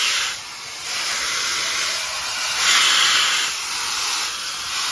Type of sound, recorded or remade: recorded